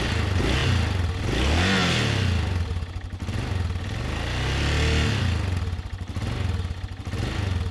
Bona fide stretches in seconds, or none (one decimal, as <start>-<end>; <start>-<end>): 0.0-7.7